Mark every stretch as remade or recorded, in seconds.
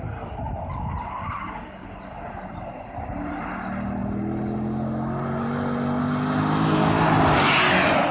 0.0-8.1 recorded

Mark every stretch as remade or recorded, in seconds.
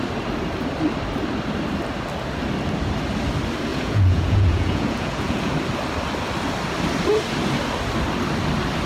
0.0-3.7 recorded; 3.7-5.5 remade; 5.5-8.9 recorded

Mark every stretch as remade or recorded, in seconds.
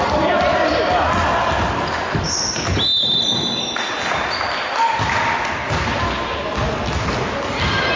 0.0-8.0 recorded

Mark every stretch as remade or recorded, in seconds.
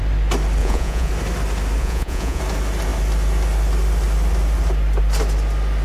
0.0-0.6 recorded; 0.6-1.1 remade; 1.1-1.8 recorded; 1.8-2.4 remade; 2.4-5.8 recorded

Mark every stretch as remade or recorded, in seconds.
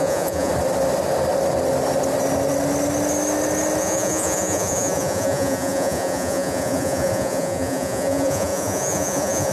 0.0-0.5 remade; 0.5-3.8 recorded; 3.8-9.5 remade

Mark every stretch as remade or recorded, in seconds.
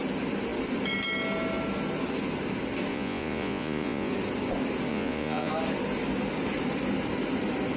0.0-2.9 recorded; 2.9-4.1 remade; 4.1-4.9 recorded; 4.9-5.5 remade; 5.5-7.8 recorded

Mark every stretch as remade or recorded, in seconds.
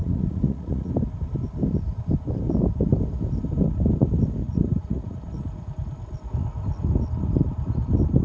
0.0-0.9 remade; 0.9-4.4 recorded; 4.4-5.3 remade; 5.3-8.2 recorded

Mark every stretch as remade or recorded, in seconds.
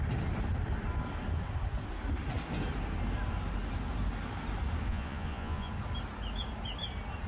0.0-4.9 recorded; 4.9-5.7 remade; 5.7-7.3 recorded